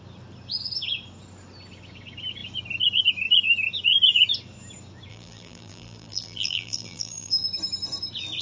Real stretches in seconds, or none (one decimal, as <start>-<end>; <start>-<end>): 0.0-5.1; 7.3-8.4